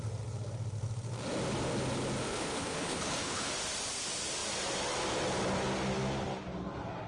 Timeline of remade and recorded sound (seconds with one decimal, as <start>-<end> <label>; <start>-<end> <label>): 0.0-2.3 recorded; 2.3-3.5 remade; 3.5-7.1 recorded